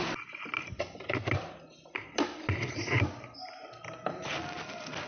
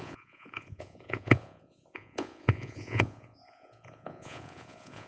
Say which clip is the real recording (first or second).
first